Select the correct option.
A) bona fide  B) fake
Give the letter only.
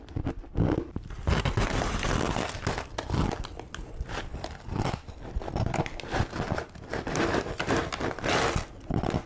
A